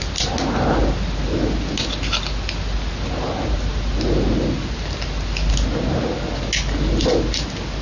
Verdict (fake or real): real